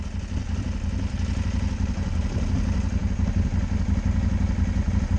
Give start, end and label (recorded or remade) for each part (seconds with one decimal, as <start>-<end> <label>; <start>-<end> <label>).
0.0-5.2 recorded